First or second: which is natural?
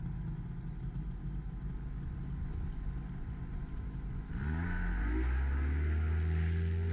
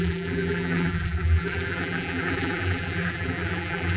first